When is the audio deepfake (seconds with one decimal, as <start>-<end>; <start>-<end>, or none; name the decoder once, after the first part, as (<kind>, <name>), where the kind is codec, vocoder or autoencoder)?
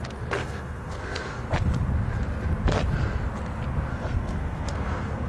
0.4-1.4 (codec, SNAC); 3.9-5.3